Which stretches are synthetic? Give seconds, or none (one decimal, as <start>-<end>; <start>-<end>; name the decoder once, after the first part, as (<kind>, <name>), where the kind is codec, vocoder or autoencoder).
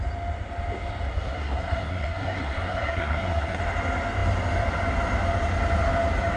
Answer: 1.1-3.6 (codec, SNAC)